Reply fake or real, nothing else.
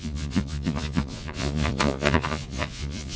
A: fake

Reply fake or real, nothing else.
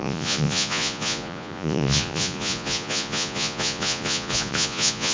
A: fake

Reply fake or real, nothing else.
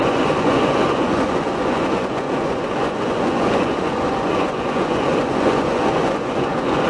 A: fake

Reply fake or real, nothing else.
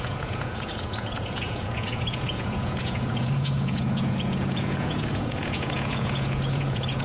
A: fake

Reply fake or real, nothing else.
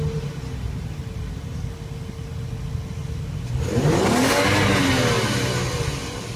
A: real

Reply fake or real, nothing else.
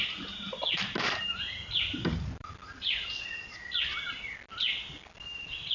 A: real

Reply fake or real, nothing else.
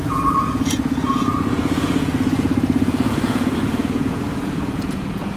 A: fake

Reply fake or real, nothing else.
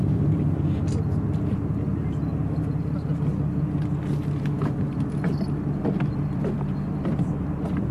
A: real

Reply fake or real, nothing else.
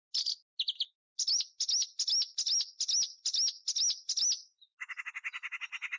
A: real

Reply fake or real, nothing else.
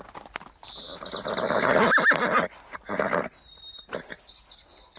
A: real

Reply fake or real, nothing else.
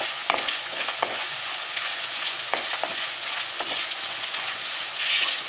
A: fake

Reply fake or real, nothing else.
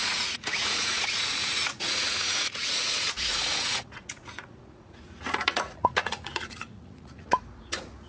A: fake